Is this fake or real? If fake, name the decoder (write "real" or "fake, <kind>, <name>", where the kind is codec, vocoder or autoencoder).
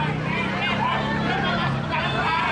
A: real